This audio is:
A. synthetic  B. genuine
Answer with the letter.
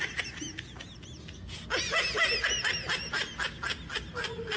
B